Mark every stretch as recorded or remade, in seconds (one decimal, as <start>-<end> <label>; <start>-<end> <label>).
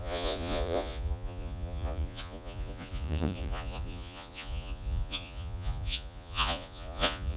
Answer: 0.0-7.4 remade